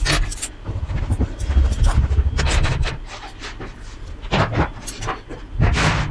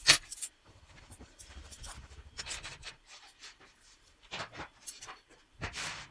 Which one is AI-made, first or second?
second